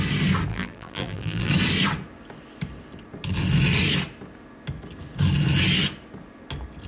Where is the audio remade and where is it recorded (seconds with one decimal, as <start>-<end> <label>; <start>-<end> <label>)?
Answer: 0.0-0.5 recorded; 0.5-1.5 remade; 1.5-6.9 recorded